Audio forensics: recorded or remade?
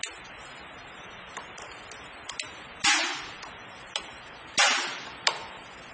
recorded